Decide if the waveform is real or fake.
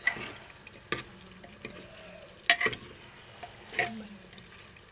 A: real